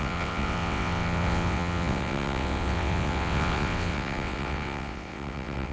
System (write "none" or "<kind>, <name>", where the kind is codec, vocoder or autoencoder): vocoder, WaveNeXt